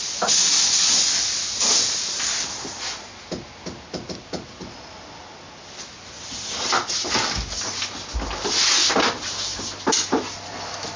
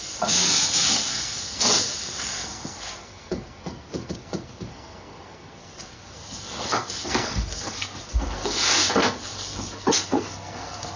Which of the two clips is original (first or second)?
first